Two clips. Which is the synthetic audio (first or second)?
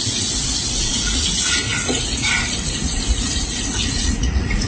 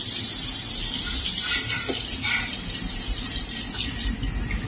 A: first